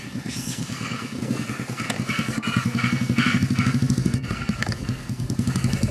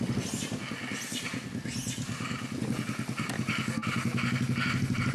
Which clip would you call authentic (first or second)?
second